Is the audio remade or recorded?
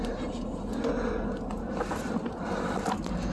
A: recorded